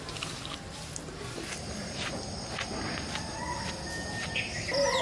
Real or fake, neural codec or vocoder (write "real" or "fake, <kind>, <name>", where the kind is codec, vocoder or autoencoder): real